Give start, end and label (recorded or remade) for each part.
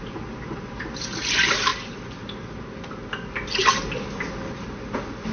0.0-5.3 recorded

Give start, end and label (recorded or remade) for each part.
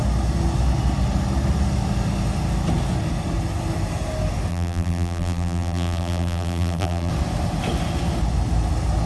0.0-4.5 recorded; 4.5-7.1 remade; 7.1-9.1 recorded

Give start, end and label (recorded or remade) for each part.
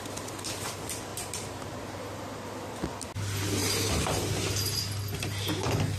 0.0-1.1 recorded; 1.1-2.8 remade; 2.8-3.6 recorded; 3.6-4.3 remade; 4.3-6.0 recorded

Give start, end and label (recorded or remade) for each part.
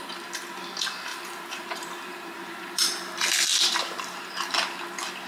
0.0-1.1 recorded; 1.1-4.3 remade; 4.3-5.3 recorded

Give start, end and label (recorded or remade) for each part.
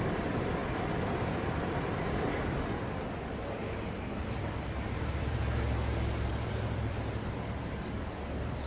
0.0-4.1 remade; 4.1-4.9 recorded; 4.9-5.4 remade; 5.4-6.3 recorded; 6.3-8.7 remade